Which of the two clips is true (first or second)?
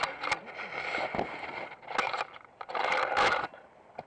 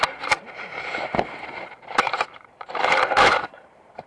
first